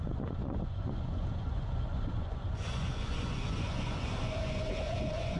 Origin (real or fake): fake